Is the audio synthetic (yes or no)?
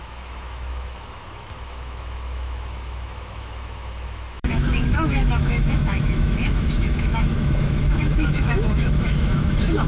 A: yes